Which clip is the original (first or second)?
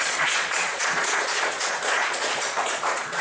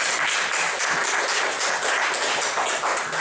second